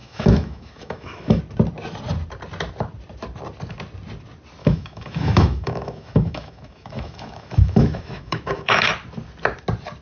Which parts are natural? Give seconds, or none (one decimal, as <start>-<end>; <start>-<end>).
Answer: 1.4-4.6; 8.9-10.0